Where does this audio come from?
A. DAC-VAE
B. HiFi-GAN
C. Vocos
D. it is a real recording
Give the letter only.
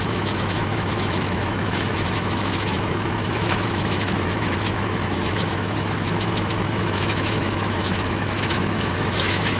A